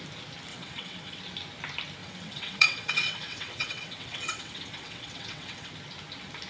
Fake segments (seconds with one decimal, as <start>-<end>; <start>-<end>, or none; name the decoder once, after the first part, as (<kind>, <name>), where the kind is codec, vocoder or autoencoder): 0.5-1.2 (vocoder, WaveNeXt); 2.0-5.7